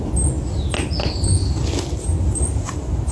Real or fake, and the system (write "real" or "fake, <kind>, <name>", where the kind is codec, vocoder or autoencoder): real